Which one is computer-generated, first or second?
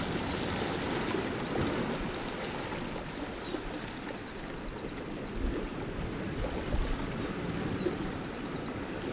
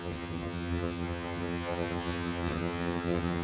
second